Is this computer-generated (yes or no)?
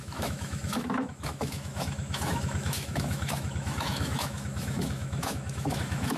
yes